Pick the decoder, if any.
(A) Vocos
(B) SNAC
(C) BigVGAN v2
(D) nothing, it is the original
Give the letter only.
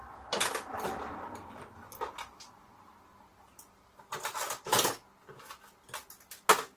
D